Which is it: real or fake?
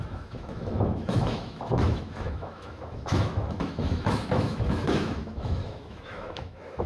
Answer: fake